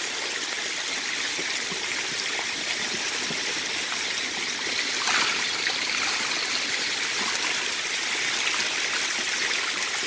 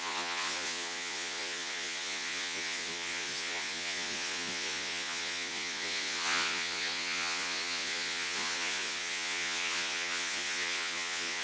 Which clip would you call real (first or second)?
first